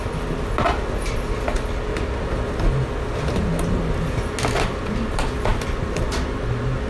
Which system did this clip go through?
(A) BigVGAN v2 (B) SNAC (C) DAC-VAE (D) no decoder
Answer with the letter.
D